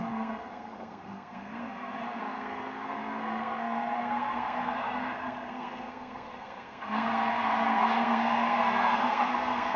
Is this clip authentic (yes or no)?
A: no